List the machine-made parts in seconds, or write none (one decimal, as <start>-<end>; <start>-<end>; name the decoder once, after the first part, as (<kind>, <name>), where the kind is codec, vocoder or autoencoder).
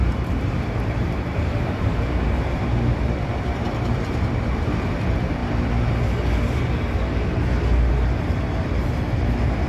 0.0-5.4 (vocoder, BigVGAN v2); 8.9-9.7